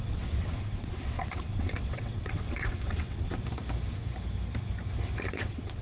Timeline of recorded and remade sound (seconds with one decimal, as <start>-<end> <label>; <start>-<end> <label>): 0.0-3.4 remade; 3.4-5.3 recorded; 5.3-5.8 remade